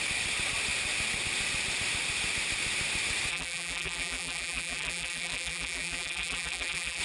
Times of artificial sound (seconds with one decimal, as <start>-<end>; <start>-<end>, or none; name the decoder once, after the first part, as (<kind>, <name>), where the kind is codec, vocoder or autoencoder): 3.3-7.0 (vocoder, BigVGAN v2)